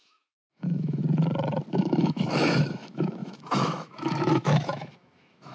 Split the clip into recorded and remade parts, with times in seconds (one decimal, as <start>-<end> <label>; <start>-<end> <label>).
0.0-1.0 remade; 1.0-1.7 recorded; 1.7-5.5 remade